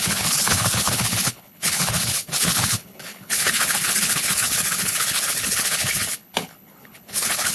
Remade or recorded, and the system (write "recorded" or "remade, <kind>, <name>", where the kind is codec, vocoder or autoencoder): remade, codec, HILCodec